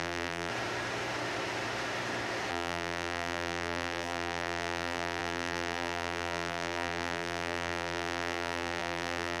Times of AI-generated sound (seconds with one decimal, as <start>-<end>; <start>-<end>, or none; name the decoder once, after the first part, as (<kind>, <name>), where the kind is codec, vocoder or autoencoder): 0.0-0.5 (vocoder, BigVGAN v2); 2.5-9.4